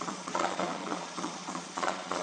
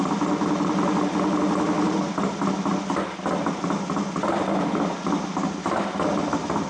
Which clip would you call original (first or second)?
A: second